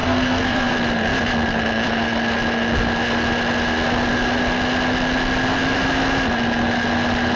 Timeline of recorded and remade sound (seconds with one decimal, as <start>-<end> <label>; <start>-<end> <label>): 0.0-0.7 remade; 0.7-7.4 recorded